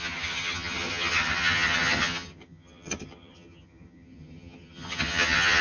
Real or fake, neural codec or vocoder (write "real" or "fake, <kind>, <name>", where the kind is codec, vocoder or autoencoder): fake, vocoder, HiFi-GAN